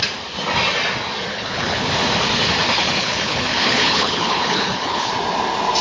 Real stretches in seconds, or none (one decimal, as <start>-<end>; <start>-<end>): 0.0-1.3; 1.9-3.0; 5.1-5.8